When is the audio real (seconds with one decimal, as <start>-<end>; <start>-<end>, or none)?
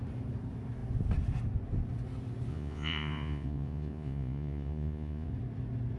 0.0-2.5; 5.3-6.0